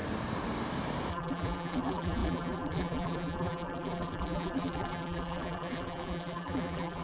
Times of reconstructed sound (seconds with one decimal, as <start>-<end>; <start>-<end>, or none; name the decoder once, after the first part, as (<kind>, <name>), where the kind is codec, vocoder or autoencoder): 1.1-7.0 (vocoder, BigVGAN v2)